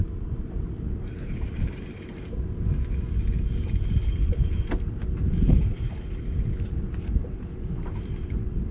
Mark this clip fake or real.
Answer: fake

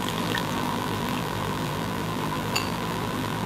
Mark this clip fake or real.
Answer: fake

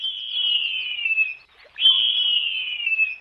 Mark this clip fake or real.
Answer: real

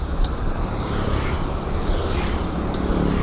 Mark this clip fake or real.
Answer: fake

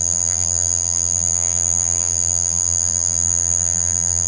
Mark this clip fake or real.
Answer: fake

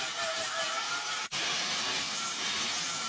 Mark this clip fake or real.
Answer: real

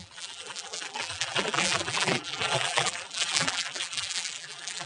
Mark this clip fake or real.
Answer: fake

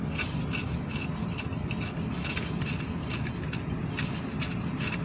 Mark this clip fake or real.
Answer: real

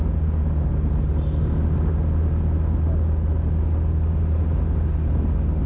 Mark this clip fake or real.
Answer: real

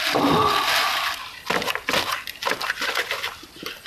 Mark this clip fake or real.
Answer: real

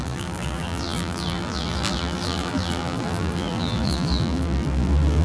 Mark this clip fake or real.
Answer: fake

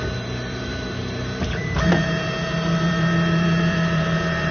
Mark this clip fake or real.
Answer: fake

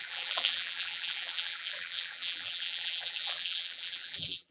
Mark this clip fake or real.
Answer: fake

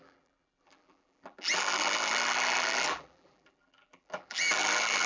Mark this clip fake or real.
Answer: fake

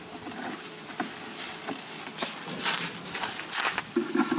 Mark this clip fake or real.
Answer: real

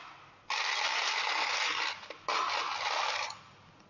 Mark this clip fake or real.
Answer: real